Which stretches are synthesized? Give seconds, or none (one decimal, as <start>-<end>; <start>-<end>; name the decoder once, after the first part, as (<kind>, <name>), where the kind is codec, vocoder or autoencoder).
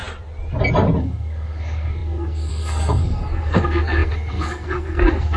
1.0-5.4 (codec, SNAC)